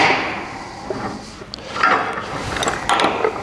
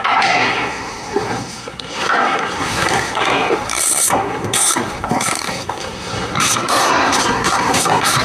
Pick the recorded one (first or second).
first